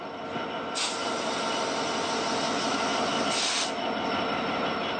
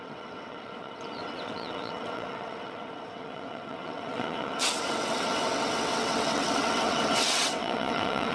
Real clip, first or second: first